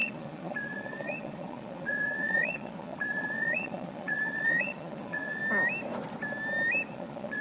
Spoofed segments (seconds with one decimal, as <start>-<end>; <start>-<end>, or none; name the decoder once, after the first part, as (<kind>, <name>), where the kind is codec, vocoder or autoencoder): 0.0-5.4 (vocoder, Vocos); 6.9-7.4